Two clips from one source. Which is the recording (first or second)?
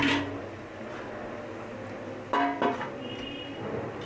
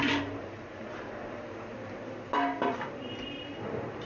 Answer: first